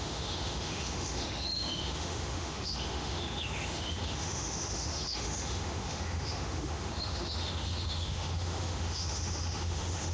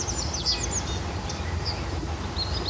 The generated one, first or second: first